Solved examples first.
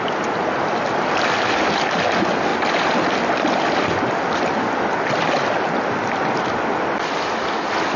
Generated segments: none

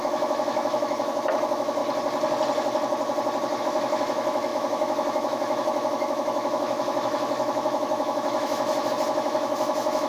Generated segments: 0.0-1.8 (autoencoder, DAC-VAE); 3.6-10.1

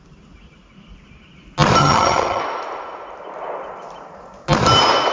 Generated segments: 1.8-2.4 (vocoder, HiFi-GAN)

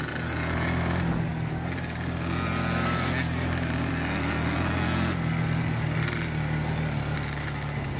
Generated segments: none